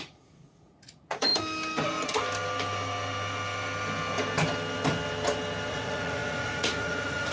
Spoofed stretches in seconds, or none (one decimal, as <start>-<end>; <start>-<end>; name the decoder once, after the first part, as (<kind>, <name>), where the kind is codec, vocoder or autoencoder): 0.0-1.3 (vocoder, Vocos); 5.7-7.3